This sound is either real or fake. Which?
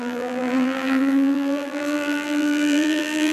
fake